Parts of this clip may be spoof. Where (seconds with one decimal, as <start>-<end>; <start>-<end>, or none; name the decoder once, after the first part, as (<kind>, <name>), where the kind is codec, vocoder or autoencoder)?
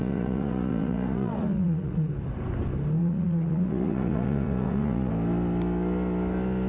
0.0-2.1 (vocoder, Vocos); 3.0-5.1